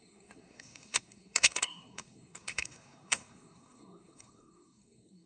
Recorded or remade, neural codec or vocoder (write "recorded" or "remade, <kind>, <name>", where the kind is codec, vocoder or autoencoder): remade, codec, SNAC